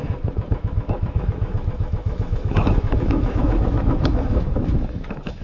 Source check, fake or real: fake